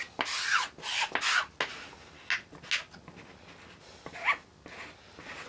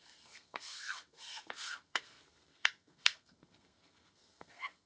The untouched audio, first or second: first